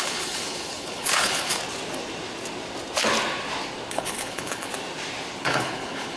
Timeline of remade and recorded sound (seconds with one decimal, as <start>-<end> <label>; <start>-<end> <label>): 0.0-1.6 remade; 1.6-3.9 recorded; 3.9-4.7 remade; 4.7-5.4 recorded; 5.4-6.2 remade